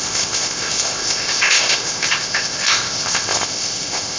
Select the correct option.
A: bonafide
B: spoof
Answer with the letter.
B